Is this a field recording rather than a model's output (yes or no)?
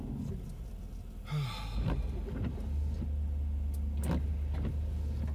yes